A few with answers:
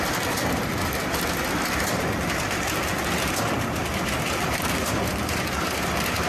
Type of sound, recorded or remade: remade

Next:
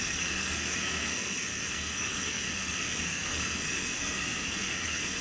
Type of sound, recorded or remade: remade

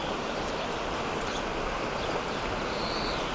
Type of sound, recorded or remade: recorded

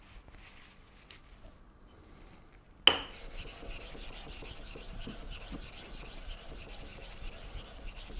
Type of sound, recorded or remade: recorded